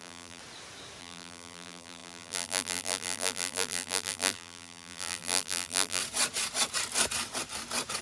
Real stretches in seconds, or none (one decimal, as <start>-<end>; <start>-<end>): 0.4-1.0; 6.0-8.0